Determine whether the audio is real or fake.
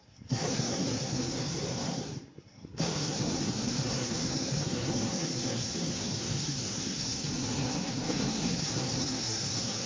fake